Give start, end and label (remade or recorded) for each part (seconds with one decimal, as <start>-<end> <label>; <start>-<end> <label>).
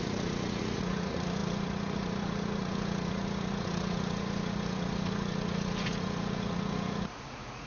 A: 0.0-7.7 remade